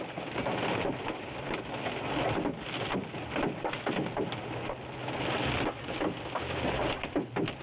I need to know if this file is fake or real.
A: real